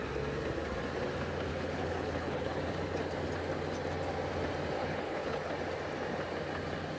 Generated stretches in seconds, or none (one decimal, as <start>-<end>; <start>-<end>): 1.5-2.6; 4.8-5.5